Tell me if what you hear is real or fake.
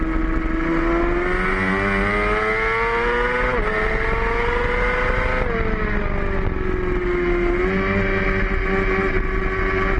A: real